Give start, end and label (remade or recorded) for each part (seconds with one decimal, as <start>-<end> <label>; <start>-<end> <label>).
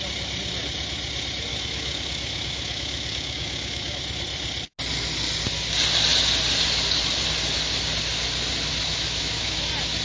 0.0-1.5 recorded; 1.5-4.0 remade; 4.0-8.7 recorded; 8.7-9.6 remade; 9.6-10.0 recorded